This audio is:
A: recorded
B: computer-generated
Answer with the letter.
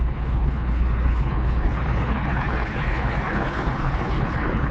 B